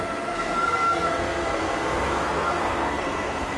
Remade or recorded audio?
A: remade